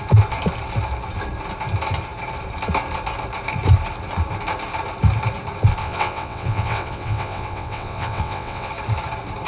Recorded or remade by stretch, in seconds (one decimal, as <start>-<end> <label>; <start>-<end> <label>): 0.0-5.8 recorded; 5.8-8.7 remade; 8.7-9.5 recorded